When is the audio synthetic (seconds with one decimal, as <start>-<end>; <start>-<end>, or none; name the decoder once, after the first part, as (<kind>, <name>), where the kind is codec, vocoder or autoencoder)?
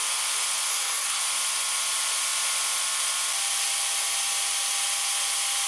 0.7-1.2 (codec, SNAC)